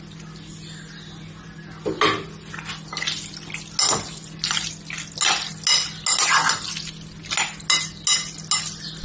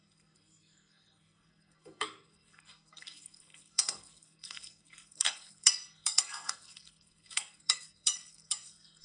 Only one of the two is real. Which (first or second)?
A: first